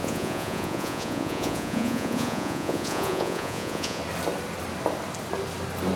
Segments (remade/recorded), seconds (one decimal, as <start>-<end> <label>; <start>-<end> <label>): 0.0-4.0 remade; 4.0-6.0 recorded